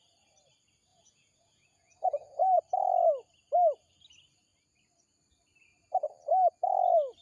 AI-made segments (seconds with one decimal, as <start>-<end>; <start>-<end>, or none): 0.9-2.6